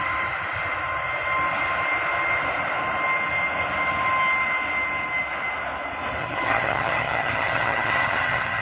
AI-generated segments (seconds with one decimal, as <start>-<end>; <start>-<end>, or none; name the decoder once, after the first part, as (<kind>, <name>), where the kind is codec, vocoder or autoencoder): 6.2-8.6 (vocoder, HiFi-GAN)